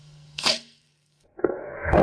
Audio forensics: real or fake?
fake